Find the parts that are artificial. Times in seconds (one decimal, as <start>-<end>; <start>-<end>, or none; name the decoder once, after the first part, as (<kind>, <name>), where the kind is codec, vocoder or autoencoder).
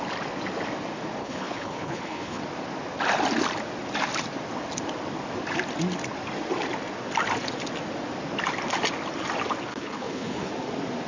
1.2-2.4 (codec, HILCodec); 9.7-10.5